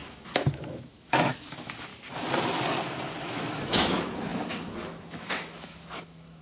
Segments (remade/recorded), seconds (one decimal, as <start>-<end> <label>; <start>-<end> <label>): 0.0-1.9 remade; 1.9-3.2 recorded; 3.2-6.4 remade